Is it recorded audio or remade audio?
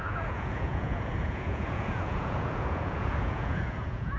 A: remade